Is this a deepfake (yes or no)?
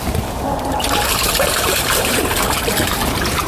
yes